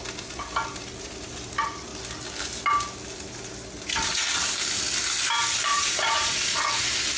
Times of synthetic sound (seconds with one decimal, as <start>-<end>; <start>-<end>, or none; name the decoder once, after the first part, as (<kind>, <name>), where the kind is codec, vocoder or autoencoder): 5.7-6.6 (vocoder, Vocos)